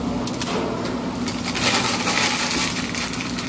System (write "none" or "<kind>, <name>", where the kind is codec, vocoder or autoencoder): none